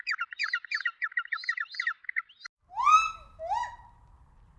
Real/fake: real